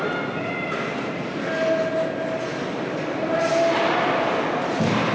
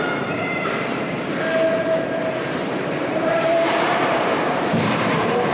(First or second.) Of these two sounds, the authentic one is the first